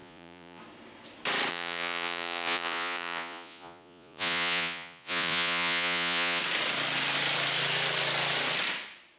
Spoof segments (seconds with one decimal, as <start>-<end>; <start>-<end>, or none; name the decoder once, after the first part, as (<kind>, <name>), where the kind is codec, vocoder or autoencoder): 0.0-0.6 (vocoder, Vocos); 1.5-6.4